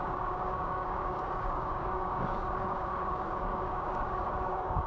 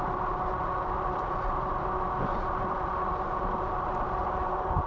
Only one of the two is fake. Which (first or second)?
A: first